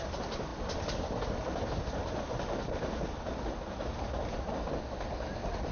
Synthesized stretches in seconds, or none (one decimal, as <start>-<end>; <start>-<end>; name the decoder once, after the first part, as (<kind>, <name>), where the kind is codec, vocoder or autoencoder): none